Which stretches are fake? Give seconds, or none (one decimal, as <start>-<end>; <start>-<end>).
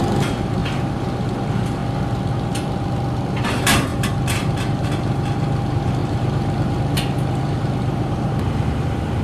0.0-1.8; 3.3-9.2